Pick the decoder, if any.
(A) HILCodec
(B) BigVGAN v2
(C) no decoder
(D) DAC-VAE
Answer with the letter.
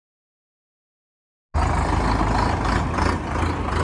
C